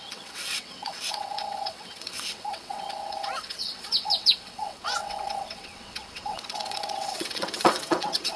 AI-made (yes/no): yes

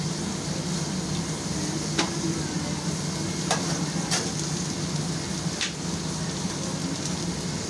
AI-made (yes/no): no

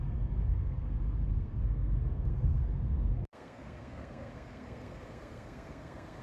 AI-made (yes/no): yes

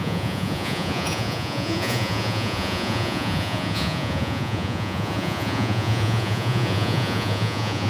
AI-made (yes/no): yes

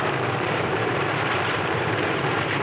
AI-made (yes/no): yes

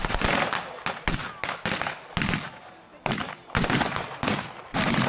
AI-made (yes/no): no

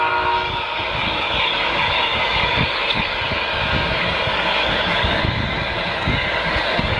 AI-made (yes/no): yes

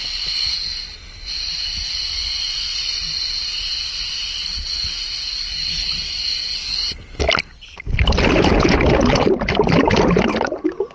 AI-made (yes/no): no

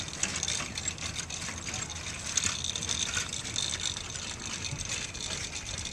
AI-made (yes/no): no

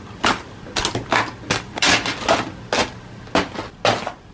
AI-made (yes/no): no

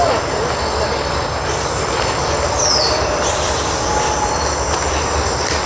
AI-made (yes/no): no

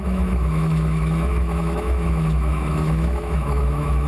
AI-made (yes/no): yes